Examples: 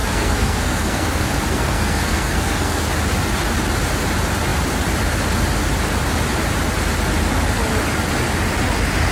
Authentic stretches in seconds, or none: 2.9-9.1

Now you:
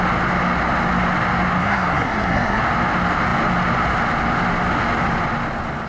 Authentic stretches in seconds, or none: 0.0-1.6; 2.6-5.9

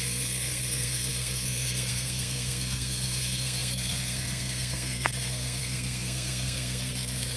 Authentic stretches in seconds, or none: none